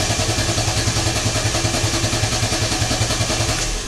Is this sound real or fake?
real